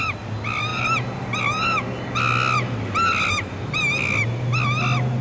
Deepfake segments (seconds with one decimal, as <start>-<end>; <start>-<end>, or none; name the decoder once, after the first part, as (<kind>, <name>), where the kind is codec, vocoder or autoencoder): none